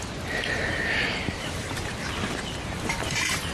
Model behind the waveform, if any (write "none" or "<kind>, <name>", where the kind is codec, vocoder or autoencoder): vocoder, BigVGAN v2